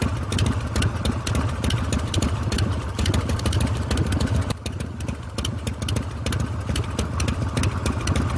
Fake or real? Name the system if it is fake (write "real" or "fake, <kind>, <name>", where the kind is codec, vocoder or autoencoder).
fake, vocoder, BigVGAN v2